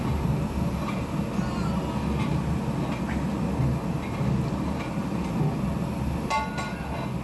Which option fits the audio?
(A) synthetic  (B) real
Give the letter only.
B